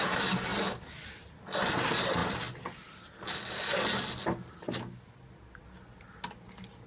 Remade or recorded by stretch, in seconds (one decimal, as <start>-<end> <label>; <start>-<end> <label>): 0.0-6.9 recorded